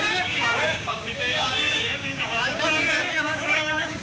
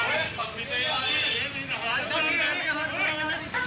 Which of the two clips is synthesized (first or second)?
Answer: first